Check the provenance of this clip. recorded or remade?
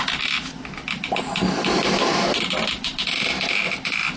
recorded